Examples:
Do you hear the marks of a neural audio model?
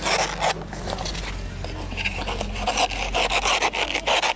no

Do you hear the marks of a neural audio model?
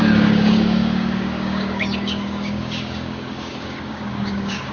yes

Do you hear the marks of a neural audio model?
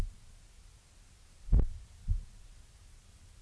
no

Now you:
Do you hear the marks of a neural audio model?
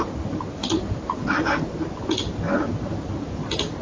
no